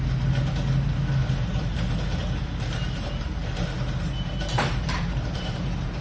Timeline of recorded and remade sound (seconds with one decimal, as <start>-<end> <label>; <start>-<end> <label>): 0.0-2.2 recorded; 2.2-6.0 remade